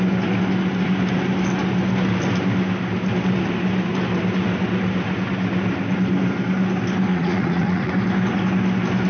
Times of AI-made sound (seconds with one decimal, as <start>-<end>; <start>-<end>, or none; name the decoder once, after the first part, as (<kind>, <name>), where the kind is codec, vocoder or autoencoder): 7.1-7.9 (vocoder, Vocos)